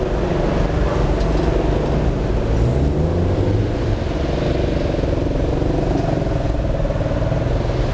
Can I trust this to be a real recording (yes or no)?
yes